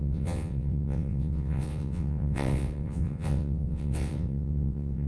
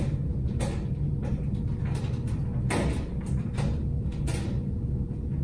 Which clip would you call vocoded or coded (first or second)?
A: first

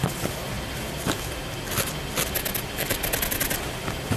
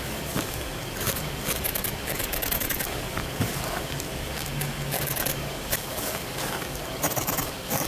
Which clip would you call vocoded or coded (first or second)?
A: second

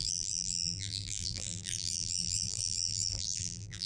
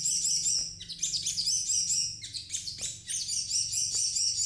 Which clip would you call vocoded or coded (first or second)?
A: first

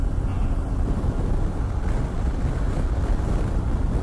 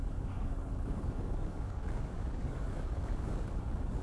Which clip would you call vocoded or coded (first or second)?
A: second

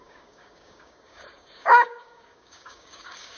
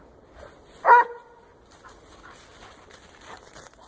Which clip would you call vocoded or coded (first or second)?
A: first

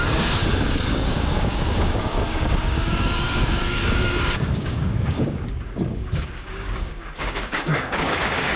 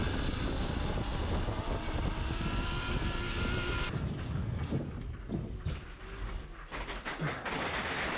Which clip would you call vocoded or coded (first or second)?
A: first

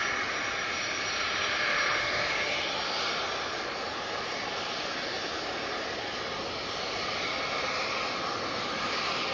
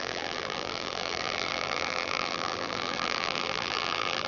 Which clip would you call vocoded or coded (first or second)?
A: second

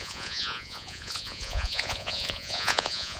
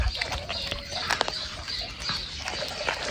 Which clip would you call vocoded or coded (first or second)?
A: first